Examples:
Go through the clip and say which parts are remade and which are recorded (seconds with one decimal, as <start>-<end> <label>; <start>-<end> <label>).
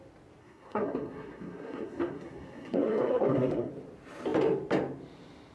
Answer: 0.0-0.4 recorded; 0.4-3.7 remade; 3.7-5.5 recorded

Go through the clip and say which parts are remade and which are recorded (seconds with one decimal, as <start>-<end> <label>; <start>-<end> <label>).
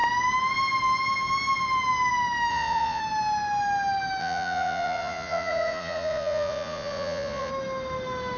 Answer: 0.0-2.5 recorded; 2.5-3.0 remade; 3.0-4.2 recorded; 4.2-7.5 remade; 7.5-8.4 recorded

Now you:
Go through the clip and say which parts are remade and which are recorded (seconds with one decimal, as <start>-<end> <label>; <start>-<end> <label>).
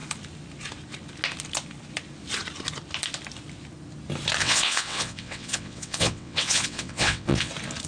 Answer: 0.0-4.4 recorded; 4.4-7.5 remade; 7.5-7.9 recorded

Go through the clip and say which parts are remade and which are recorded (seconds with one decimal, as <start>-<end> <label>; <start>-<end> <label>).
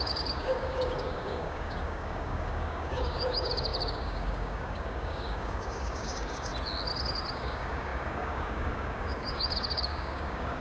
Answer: 0.0-6.5 remade; 6.5-7.3 recorded; 7.3-10.6 remade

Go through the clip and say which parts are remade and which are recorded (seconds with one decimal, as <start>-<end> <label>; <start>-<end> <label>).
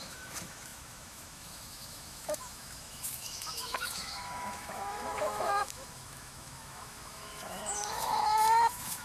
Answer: 0.0-9.0 remade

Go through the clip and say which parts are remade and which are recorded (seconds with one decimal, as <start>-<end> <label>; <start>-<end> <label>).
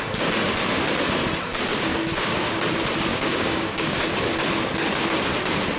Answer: 0.0-1.9 recorded; 1.9-2.6 remade; 2.6-3.1 recorded; 3.1-4.0 remade; 4.0-5.8 recorded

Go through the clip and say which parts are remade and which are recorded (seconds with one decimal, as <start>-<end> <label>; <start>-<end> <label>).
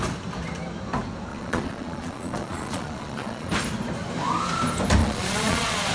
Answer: 0.0-1.3 recorded; 1.3-3.5 remade; 3.5-5.0 recorded; 5.0-5.9 remade